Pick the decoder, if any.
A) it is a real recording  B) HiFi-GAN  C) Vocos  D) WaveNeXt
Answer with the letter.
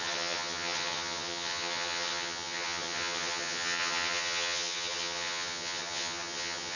B